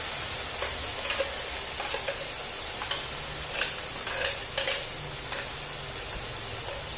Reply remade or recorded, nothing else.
recorded